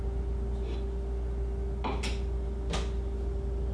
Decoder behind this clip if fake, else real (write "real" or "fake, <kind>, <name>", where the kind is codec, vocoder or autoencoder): real